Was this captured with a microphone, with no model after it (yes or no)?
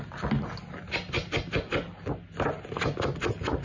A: yes